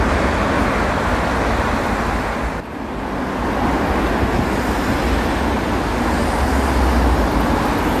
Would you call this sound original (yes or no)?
yes